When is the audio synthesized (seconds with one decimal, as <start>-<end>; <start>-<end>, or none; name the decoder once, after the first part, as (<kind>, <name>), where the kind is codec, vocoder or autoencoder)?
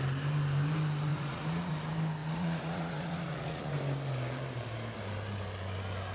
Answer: 1.1-1.7 (vocoder, Vocos); 2.2-3.7